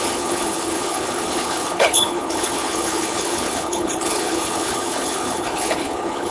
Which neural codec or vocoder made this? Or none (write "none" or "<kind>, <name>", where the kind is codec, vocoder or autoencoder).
codec, HILCodec